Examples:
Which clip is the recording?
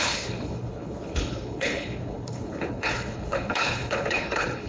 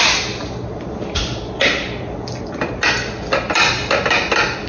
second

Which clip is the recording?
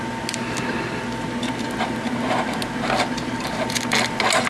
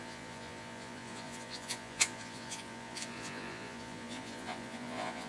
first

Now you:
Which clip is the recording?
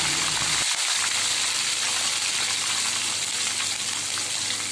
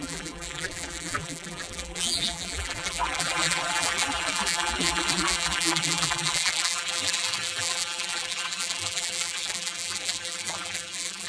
first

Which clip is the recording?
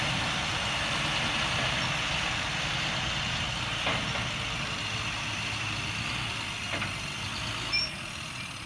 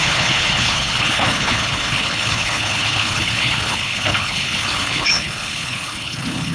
first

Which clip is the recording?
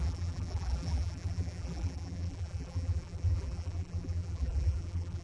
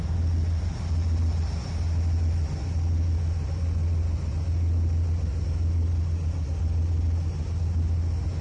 second